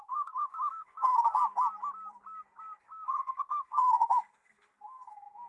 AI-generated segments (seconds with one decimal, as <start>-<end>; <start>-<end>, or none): 0.0-1.4; 2.8-5.5